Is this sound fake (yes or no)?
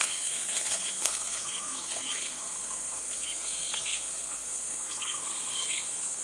yes